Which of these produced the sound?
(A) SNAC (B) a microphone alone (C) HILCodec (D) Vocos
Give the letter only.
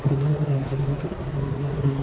A